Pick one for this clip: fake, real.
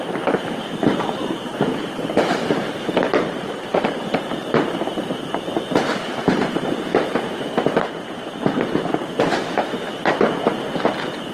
fake